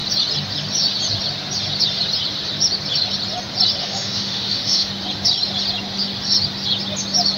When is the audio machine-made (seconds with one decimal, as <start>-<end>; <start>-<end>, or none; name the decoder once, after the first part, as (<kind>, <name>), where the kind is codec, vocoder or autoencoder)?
3.8-4.9 (autoencoder, DAC-VAE)